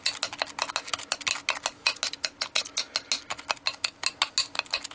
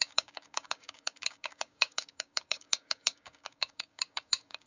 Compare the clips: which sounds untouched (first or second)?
first